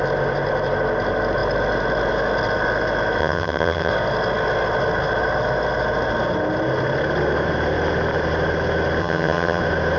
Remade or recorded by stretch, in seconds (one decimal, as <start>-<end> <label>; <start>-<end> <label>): 0.0-3.2 recorded; 3.2-3.9 remade; 3.9-9.0 recorded; 9.0-9.6 remade; 9.6-10.0 recorded